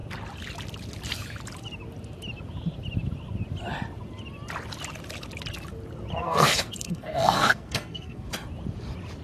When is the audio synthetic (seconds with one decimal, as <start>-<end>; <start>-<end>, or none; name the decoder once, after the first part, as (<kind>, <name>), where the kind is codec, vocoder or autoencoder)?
6.2-8.3 (codec, SNAC)